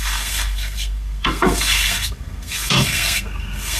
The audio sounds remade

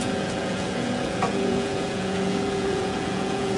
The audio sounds remade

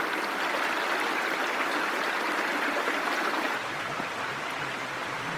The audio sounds recorded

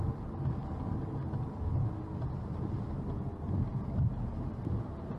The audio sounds recorded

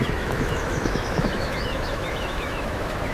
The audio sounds remade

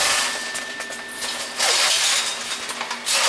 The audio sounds recorded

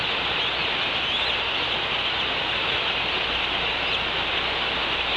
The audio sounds recorded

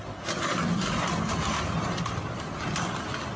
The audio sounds recorded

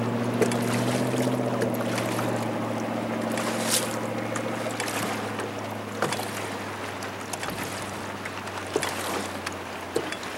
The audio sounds recorded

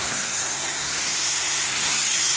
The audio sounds remade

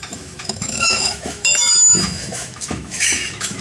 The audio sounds remade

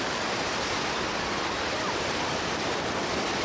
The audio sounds recorded